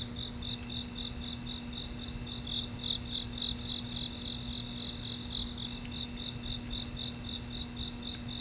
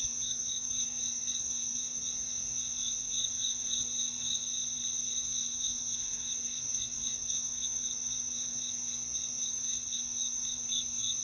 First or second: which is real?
first